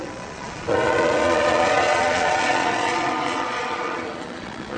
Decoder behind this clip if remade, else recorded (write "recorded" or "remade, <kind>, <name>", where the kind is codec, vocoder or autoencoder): remade, vocoder, Vocos